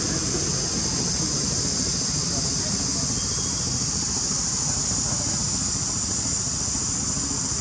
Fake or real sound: real